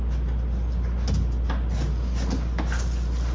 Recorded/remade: recorded